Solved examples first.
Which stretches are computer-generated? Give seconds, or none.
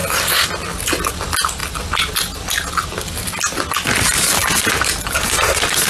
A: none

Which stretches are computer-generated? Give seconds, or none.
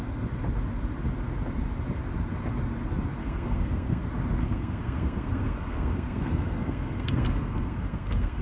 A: 3.2-4.0 (codec, SNAC); 4.4-8.4